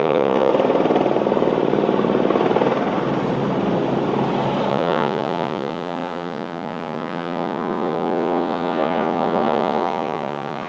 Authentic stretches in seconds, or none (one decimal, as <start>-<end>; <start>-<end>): 0.5-4.7